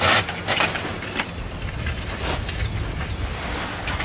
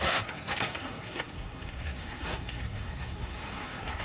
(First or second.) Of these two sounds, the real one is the first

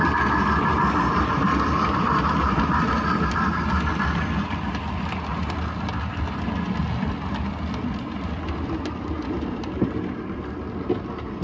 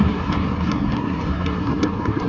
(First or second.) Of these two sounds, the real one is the first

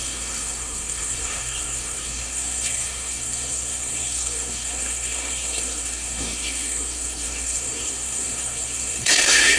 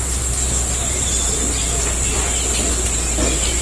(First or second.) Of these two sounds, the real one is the second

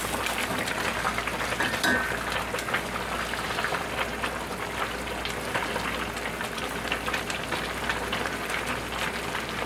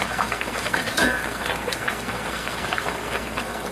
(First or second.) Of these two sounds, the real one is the first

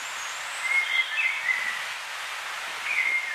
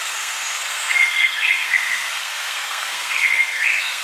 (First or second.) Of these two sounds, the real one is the first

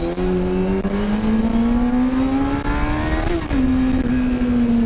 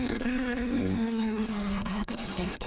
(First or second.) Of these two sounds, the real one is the first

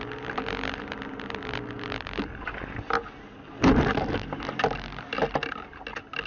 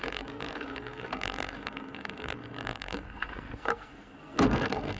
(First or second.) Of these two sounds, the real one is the first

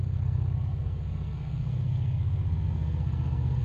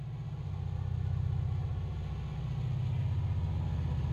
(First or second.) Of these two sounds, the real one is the second